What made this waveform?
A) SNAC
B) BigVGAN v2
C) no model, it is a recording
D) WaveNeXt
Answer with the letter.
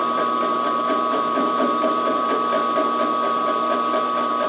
B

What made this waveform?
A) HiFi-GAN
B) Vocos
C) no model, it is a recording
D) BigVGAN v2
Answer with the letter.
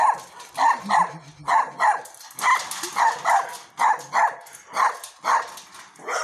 C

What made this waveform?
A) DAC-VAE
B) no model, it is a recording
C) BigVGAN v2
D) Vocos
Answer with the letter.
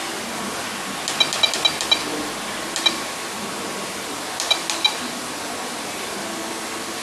B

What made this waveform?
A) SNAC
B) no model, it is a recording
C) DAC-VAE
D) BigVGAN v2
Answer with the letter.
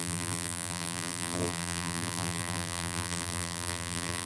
D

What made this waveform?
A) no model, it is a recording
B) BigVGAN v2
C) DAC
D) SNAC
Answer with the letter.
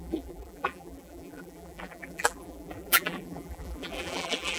B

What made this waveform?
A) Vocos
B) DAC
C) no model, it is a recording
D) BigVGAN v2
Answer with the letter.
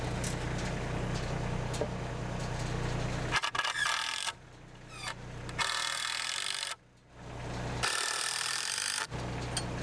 C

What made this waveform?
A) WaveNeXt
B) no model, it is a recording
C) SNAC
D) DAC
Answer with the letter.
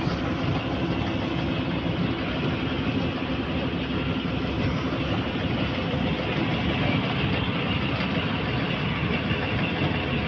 B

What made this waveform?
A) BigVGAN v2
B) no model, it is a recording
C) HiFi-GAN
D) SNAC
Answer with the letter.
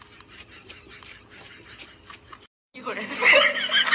B